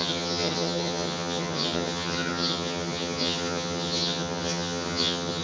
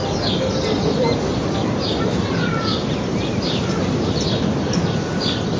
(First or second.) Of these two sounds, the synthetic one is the first